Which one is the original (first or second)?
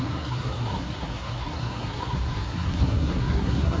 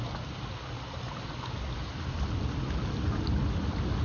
second